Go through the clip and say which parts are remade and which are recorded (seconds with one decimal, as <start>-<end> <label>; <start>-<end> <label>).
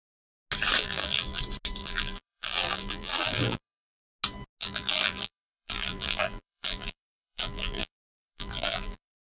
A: 0.0-0.8 recorded; 0.8-1.4 remade; 1.4-1.8 recorded; 1.8-4.0 remade; 4.0-4.6 recorded; 4.6-9.2 remade